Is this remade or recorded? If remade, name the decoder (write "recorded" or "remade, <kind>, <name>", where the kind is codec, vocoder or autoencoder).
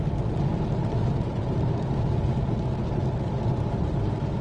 recorded